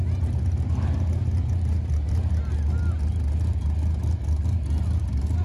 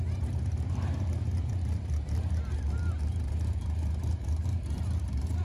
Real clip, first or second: first